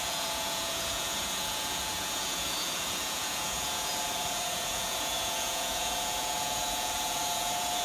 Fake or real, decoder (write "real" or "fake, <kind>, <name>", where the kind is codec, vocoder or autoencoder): fake, vocoder, Vocos